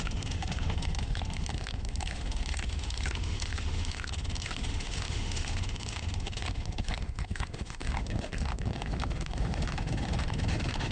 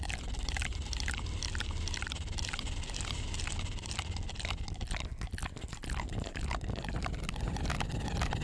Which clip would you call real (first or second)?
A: second